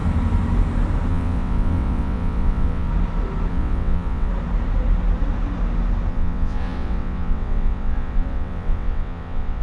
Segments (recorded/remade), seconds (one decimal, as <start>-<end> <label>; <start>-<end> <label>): 0.0-1.1 recorded; 1.1-2.9 remade; 2.9-3.5 recorded; 3.5-4.3 remade; 4.3-6.1 recorded; 6.1-9.6 remade